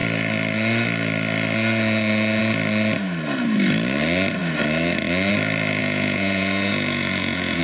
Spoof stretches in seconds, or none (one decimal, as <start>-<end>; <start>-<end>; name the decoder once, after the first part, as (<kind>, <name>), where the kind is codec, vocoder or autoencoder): 5.8-7.6 (vocoder, Vocos)

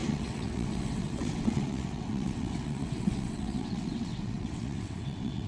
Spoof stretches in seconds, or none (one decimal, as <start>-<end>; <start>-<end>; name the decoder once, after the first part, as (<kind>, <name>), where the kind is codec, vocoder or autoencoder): 0.0-5.5 (vocoder, WaveNeXt)